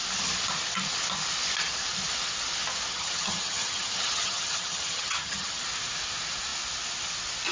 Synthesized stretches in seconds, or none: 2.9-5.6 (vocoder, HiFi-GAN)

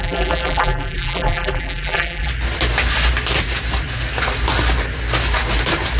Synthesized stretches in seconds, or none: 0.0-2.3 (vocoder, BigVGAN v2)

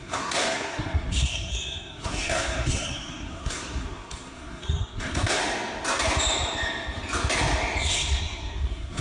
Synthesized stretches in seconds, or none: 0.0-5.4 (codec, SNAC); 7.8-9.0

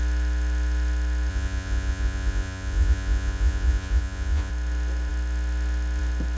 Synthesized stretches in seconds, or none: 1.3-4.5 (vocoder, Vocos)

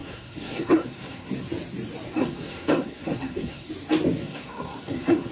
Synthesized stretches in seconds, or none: 0.0-1.3 (codec, SNAC); 2.2-3.7; 4.2-5.3

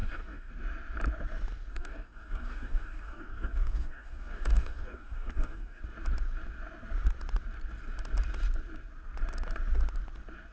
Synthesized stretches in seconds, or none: 0.0-0.5 (codec, DAC); 1.7-5.8